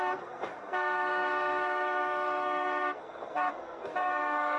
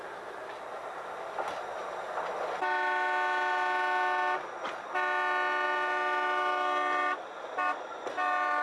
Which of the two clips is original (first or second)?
second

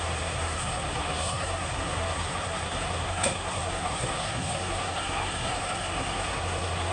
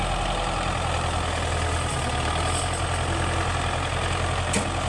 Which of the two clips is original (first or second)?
second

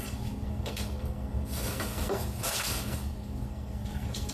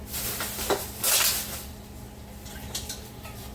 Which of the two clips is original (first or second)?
second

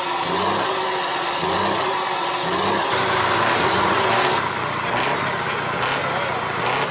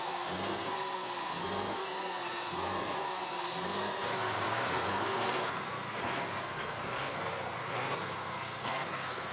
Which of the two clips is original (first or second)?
first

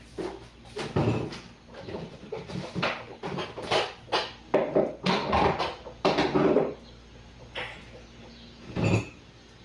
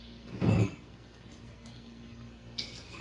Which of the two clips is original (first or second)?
first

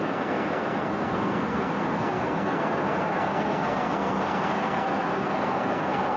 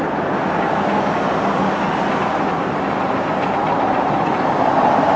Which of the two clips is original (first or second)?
second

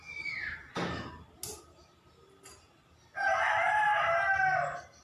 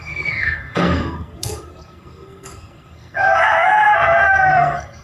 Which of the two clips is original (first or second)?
first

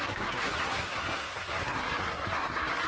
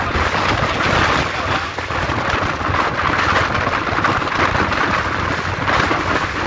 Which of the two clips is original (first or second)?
second